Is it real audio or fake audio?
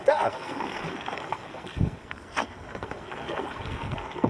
fake